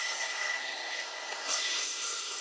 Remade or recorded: remade